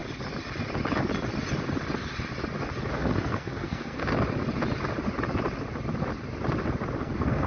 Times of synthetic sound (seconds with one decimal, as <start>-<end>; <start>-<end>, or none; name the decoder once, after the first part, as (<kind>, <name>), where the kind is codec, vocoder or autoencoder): 2.9-4.0 (codec, SNAC); 7.0-7.5